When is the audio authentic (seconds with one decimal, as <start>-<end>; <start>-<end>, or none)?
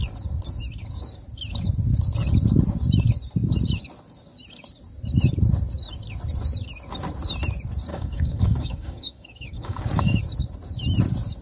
0.0-7.9; 10.2-11.4